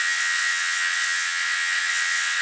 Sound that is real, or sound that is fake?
fake